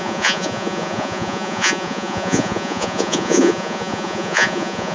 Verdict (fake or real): fake